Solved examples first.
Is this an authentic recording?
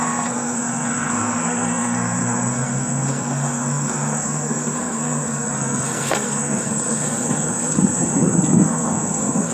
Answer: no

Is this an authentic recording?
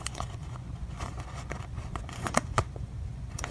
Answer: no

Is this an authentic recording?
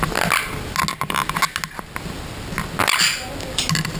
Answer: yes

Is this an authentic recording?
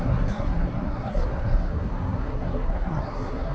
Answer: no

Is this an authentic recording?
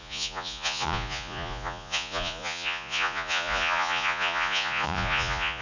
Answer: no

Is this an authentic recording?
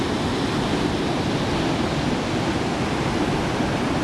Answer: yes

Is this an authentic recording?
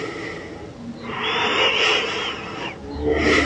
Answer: yes